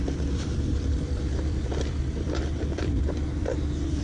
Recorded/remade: remade